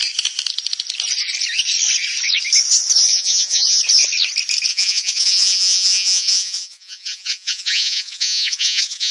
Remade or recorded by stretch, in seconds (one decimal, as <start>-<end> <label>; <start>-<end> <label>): 0.0-3.1 recorded; 3.1-3.8 remade; 3.8-4.7 recorded; 4.7-9.1 remade